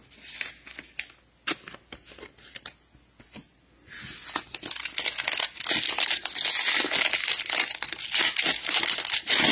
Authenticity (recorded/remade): recorded